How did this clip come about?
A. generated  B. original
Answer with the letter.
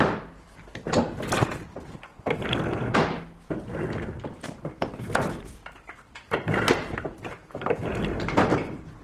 B